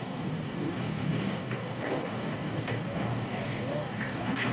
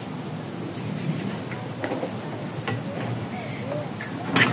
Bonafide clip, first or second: second